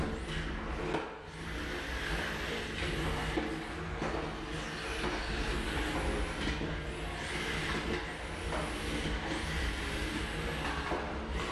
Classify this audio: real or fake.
real